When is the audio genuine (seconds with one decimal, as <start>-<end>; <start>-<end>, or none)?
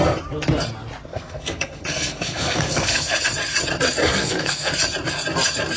0.0-1.1; 3.2-4.0; 4.7-5.8